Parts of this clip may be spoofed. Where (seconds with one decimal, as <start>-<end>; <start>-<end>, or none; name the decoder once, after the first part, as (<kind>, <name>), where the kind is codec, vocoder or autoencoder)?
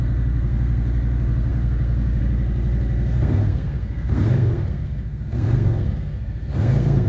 0.0-7.1 (codec, SNAC)